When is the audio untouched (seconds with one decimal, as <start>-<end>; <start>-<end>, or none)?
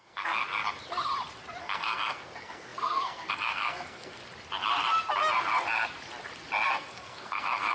0.4-1.6; 4.2-6.7